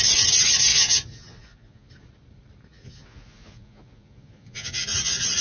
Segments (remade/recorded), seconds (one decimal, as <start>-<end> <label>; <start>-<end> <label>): 0.0-0.7 recorded; 0.7-1.9 remade; 1.9-2.7 recorded; 2.7-5.4 remade